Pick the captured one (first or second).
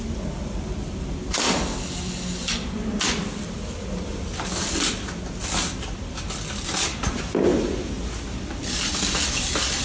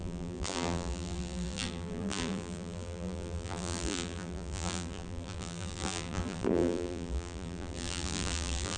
first